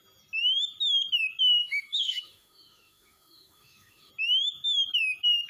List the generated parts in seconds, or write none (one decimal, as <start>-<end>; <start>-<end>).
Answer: 1.6-4.1